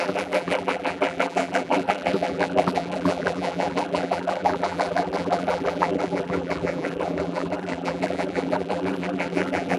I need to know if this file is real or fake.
fake